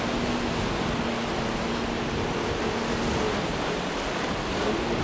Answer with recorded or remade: recorded